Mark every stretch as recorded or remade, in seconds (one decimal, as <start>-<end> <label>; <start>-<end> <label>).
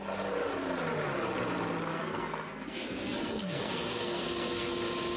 0.0-1.9 recorded; 1.9-4.7 remade; 4.7-5.2 recorded